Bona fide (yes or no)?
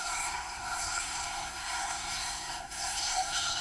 no